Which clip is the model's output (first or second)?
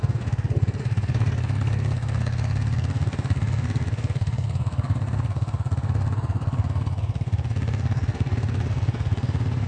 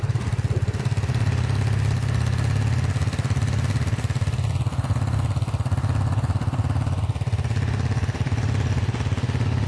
first